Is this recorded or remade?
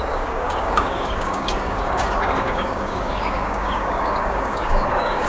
remade